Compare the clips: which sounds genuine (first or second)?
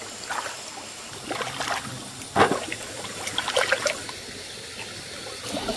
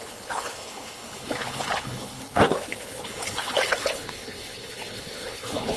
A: first